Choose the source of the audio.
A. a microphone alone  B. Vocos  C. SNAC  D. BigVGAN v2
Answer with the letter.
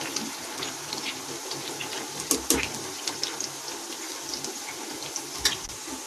A